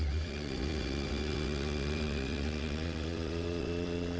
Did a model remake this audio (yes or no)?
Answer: yes